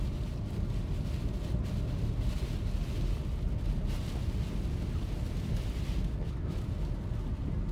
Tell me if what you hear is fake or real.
real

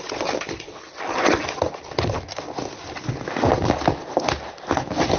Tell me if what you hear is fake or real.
real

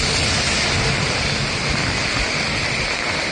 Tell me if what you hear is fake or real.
real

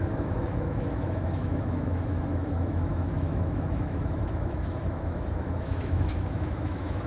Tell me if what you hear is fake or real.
fake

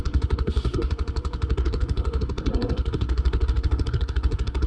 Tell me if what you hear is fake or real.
fake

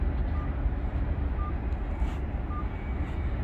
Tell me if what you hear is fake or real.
real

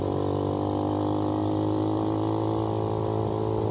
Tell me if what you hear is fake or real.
real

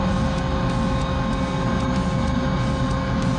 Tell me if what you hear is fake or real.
real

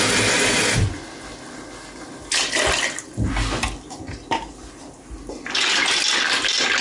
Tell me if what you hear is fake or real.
real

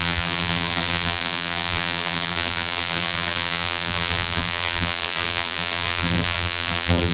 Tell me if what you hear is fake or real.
fake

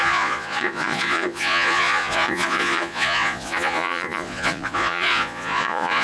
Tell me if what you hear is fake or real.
fake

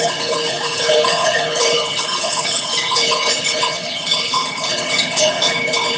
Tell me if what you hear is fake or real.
fake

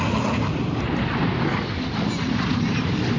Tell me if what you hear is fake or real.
real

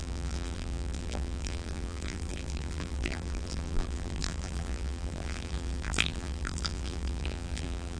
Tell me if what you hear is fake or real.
fake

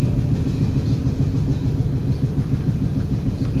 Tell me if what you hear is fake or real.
real